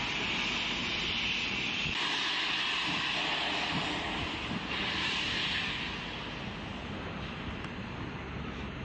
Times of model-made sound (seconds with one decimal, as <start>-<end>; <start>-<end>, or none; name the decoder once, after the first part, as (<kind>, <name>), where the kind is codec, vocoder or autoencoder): none